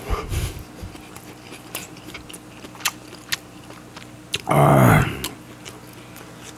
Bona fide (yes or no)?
yes